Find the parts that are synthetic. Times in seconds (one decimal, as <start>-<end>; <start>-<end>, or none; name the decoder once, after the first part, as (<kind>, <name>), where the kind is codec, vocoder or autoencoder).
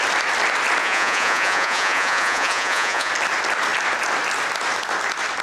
0.8-3.1 (vocoder, Vocos)